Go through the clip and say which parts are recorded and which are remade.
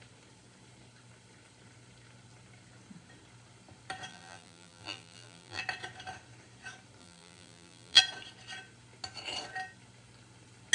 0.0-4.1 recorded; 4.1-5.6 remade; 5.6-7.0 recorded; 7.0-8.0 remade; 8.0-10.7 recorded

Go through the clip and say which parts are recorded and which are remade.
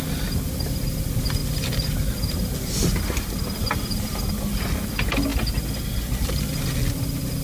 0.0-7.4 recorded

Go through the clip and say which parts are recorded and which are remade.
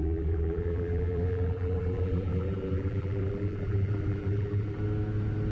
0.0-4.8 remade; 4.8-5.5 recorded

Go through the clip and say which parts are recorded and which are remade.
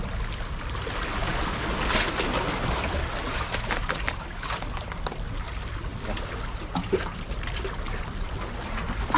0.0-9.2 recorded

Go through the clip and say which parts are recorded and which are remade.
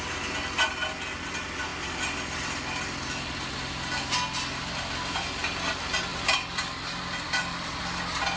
0.0-6.1 recorded; 6.1-7.8 remade; 7.8-8.4 recorded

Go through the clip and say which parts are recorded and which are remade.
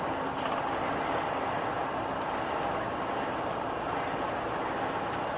0.0-1.8 recorded; 1.8-4.3 remade; 4.3-5.4 recorded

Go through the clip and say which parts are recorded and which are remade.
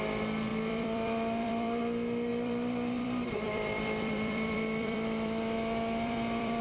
0.0-0.5 recorded; 0.5-1.8 remade; 1.8-2.3 recorded; 2.3-6.6 remade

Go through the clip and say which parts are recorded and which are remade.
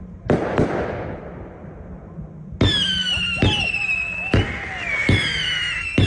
0.0-6.1 recorded